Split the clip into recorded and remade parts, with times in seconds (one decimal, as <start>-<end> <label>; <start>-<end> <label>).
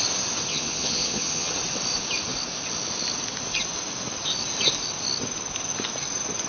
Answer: 0.0-0.5 recorded; 0.5-1.5 remade; 1.5-6.5 recorded